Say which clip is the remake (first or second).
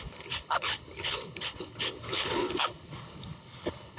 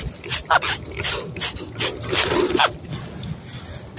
first